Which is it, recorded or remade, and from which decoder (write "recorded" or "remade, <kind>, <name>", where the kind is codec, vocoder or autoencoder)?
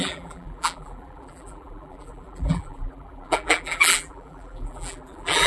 remade, vocoder, BigVGAN v2